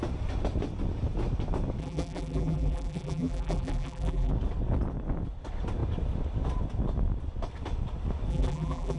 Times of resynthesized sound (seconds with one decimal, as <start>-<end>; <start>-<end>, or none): 1.8-4.3; 8.3-9.0